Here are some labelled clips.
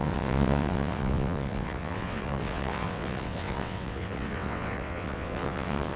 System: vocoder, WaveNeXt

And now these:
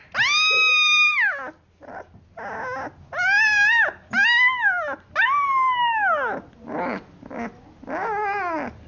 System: none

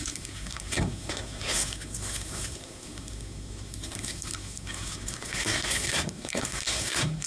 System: codec, SNAC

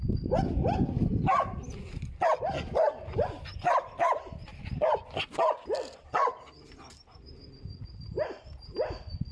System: none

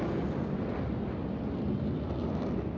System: none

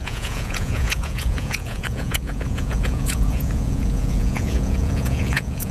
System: vocoder, Vocos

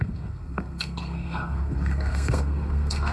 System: codec, SNAC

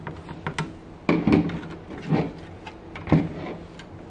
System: none